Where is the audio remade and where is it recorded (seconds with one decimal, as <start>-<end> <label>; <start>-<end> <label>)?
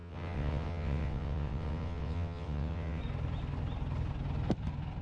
0.0-3.0 remade; 3.0-5.0 recorded